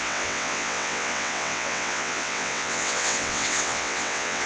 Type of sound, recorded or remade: remade